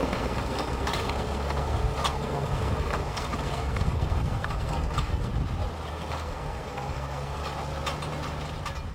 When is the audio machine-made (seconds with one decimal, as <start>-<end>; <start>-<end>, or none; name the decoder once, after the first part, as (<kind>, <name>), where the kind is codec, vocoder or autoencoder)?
0.0-5.3 (codec, SNAC); 5.9-7.4